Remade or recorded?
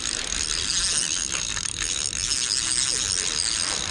recorded